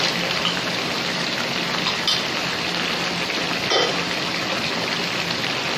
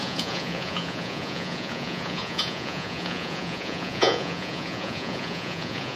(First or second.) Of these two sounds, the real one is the first